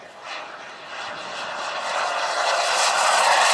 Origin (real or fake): real